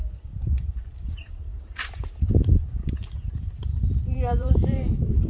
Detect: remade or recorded remade